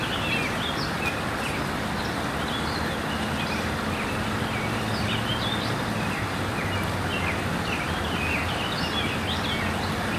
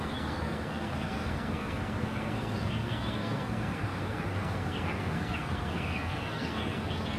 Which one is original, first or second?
first